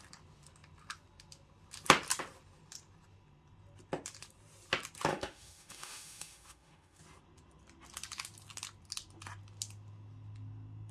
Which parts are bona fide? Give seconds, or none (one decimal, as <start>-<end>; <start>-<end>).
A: 0.0-5.1; 7.0-10.9